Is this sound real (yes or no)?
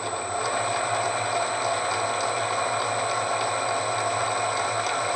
yes